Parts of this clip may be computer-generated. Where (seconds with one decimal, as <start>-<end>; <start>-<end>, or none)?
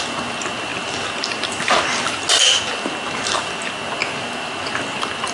none